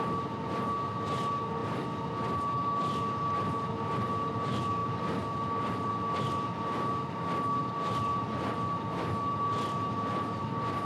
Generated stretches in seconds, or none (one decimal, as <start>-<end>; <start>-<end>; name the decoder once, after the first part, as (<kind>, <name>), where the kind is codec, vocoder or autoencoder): none